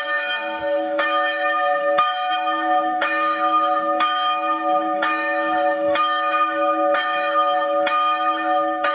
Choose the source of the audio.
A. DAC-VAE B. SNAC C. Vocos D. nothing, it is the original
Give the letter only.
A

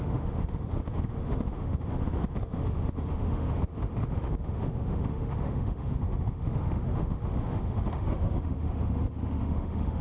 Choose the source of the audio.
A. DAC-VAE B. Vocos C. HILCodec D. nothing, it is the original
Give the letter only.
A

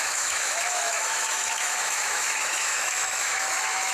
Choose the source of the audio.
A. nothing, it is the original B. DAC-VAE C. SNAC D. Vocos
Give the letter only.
B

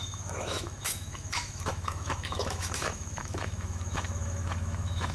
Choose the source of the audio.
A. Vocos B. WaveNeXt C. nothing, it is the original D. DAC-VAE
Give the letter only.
D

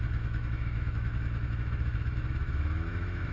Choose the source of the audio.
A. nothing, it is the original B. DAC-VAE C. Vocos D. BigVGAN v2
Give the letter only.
B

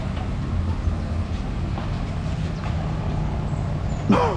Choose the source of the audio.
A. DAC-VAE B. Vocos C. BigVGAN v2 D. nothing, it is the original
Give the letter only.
D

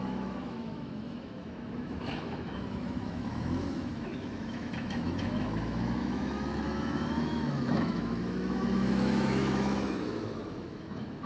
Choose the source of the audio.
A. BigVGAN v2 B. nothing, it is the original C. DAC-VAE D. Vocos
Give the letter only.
C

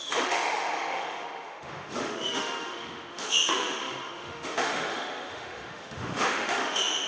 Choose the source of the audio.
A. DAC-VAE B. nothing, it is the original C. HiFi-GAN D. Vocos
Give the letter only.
A